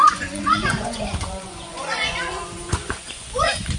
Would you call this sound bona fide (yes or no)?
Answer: no